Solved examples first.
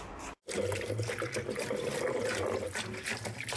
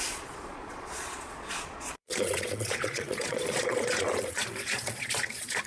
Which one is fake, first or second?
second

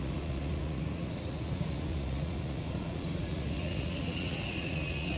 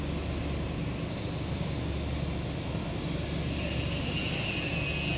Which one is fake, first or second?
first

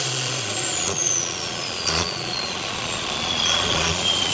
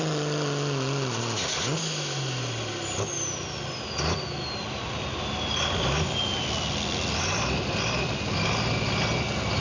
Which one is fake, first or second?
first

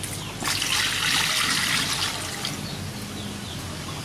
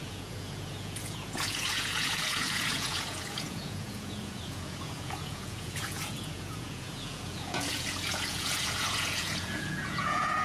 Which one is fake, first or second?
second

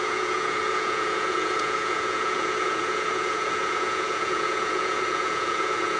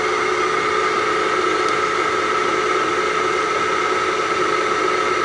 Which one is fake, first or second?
first